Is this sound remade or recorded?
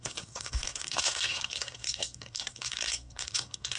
remade